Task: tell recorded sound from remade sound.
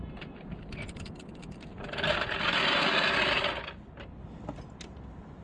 recorded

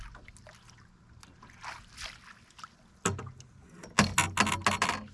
recorded